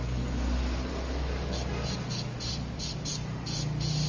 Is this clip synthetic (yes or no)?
no